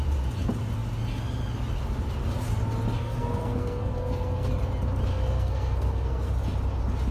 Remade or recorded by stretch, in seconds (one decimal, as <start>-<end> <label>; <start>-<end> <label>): 0.0-3.0 recorded; 3.0-4.5 remade; 4.5-5.1 recorded; 5.1-6.3 remade; 6.3-7.1 recorded